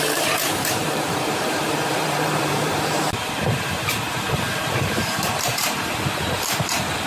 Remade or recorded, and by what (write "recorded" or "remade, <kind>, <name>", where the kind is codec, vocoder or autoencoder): remade, vocoder, BigVGAN v2